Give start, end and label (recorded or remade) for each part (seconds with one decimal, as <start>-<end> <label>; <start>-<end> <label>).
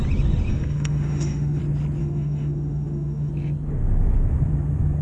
0.0-0.5 recorded; 0.5-1.6 remade; 1.6-2.0 recorded; 2.0-3.3 remade; 3.3-5.0 recorded